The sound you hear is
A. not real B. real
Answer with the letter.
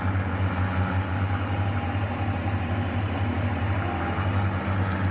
B